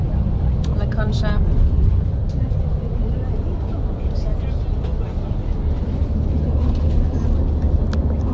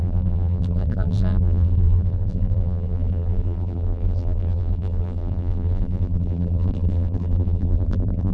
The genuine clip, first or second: first